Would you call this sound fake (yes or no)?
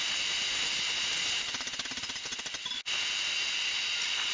no